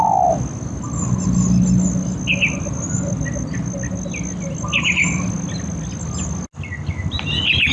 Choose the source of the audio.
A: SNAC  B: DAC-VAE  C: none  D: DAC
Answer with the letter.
C